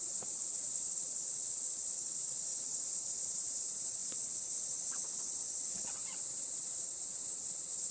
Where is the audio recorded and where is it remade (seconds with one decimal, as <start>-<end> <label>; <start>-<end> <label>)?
0.0-7.9 remade